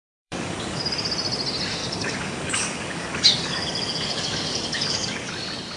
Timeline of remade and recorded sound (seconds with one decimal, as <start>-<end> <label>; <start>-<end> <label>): 0.0-0.8 remade; 0.8-1.8 recorded; 1.8-5.3 remade; 5.3-5.8 recorded